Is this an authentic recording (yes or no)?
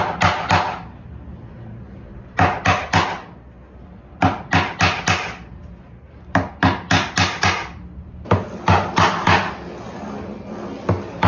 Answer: yes